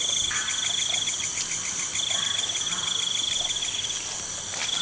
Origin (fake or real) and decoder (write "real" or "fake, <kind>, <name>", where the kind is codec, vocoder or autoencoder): real